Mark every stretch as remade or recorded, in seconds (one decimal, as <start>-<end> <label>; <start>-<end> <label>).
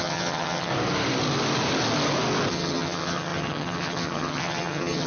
0.0-0.7 remade; 0.7-2.5 recorded; 2.5-5.1 remade